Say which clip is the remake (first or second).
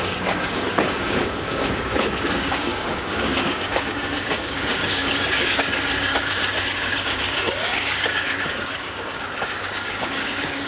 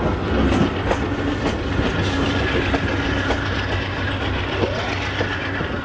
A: first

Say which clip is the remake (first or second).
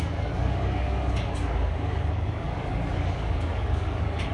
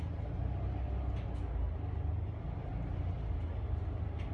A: first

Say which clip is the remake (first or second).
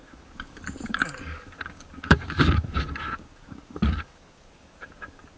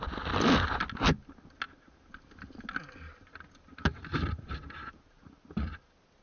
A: first